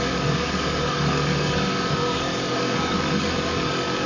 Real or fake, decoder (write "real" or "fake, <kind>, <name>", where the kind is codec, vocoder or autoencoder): fake, codec, DAC